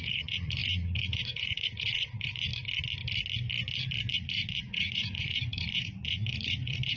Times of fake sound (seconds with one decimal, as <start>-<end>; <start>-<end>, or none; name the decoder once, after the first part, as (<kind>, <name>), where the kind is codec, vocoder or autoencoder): 0.0-2.5 (vocoder, Vocos); 4.1-7.0